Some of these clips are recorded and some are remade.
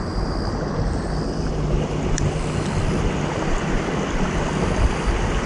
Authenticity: recorded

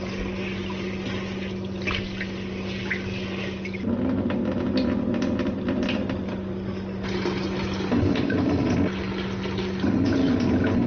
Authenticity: recorded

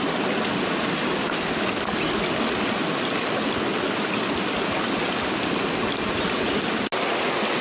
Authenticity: recorded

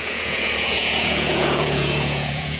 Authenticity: remade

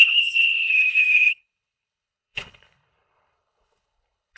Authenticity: remade